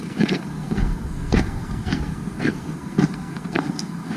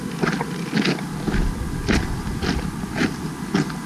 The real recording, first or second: second